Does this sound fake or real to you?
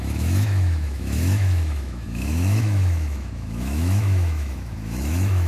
fake